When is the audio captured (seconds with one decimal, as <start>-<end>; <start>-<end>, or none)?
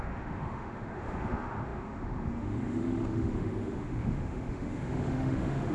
none